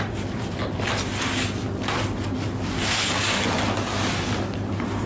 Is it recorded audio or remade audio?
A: recorded